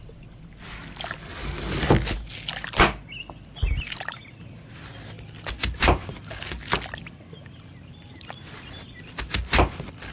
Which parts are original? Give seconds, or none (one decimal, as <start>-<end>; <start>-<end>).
0.0-10.1

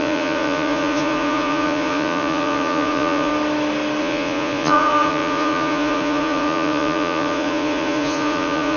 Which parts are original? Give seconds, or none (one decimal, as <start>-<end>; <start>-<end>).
3.3-4.0

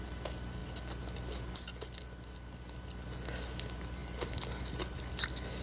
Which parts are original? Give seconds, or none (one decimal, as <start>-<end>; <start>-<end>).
0.0-5.6

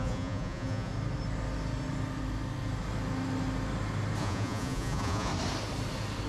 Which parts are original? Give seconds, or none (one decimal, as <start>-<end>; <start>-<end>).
0.9-4.2; 5.3-6.3

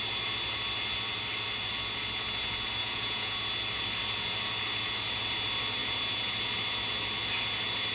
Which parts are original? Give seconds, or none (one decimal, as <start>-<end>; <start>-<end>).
0.0-2.8; 3.3-7.9